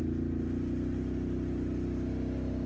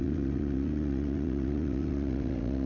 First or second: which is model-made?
second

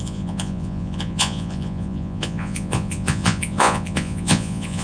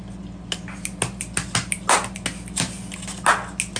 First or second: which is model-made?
first